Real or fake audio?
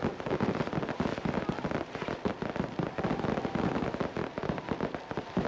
real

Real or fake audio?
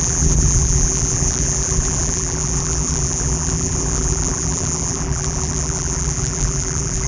fake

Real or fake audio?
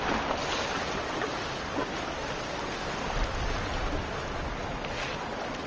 real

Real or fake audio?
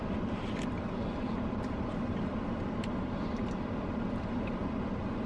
fake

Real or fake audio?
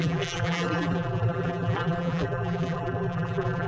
fake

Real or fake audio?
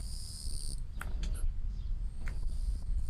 fake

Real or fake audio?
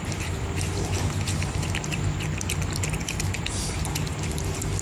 fake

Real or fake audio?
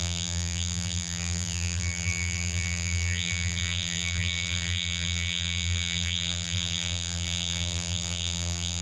fake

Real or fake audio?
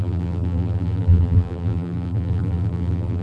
fake